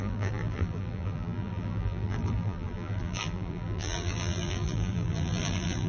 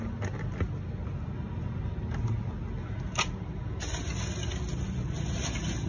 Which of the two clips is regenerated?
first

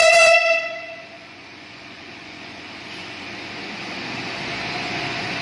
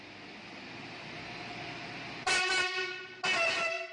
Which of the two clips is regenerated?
first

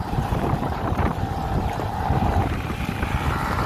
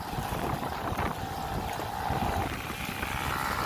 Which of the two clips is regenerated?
first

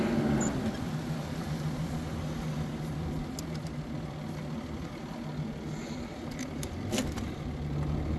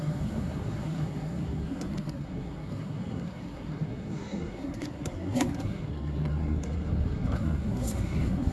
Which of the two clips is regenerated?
second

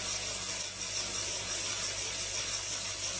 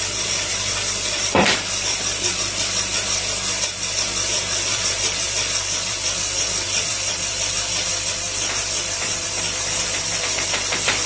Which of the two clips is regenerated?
second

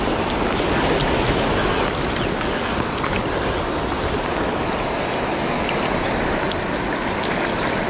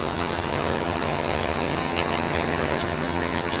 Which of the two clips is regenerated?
second